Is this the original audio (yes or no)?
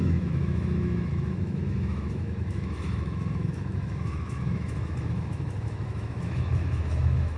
no